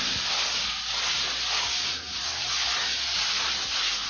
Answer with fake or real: real